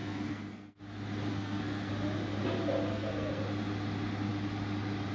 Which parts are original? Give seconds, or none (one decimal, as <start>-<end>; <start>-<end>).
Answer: 0.8-1.3; 1.9-2.9; 3.4-5.1